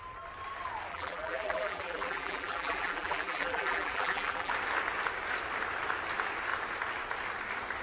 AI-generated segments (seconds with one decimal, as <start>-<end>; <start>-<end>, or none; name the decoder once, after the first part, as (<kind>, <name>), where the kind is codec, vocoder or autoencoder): 0.9-4.5 (vocoder, BigVGAN v2)